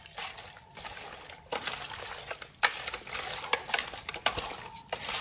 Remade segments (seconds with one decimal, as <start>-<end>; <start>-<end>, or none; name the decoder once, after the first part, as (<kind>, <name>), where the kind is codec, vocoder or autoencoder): none